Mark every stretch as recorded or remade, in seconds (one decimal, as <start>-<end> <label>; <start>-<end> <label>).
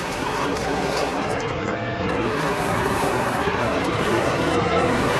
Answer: 0.0-5.2 remade